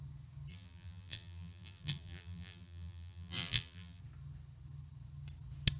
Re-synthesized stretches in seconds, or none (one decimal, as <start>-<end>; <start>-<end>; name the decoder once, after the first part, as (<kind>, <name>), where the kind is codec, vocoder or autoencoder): 0.5-4.0 (vocoder, BigVGAN v2)